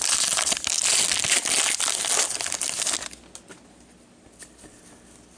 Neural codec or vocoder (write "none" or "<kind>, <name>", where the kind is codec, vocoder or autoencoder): none